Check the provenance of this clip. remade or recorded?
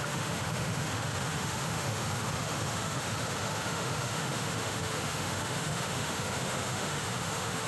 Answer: remade